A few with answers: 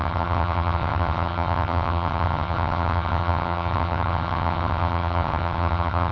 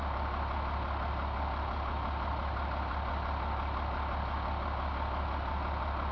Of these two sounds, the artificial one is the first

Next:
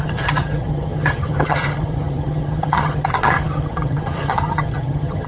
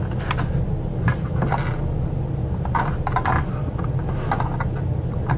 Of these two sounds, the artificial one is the first